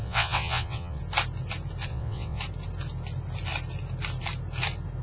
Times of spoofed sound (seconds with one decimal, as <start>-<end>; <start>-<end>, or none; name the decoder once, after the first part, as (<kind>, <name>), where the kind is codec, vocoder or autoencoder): 0.0-1.0 (vocoder, WaveNeXt); 1.9-2.4